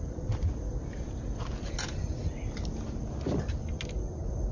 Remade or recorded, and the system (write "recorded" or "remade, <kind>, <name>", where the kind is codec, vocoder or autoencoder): recorded